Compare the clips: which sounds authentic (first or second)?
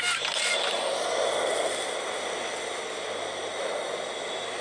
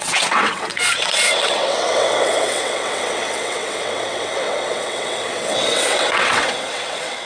first